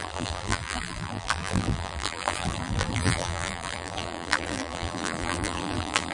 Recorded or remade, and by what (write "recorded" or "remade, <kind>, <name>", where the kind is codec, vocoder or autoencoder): remade, vocoder, BigVGAN v2